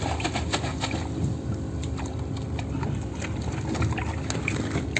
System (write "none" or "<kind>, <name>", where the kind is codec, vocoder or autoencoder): none